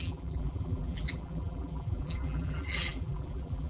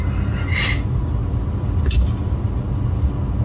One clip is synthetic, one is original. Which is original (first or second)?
second